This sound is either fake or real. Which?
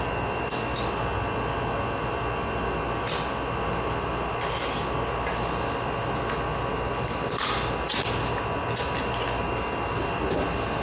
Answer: real